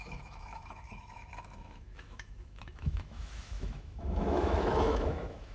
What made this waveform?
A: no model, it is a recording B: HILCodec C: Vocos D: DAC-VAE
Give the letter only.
D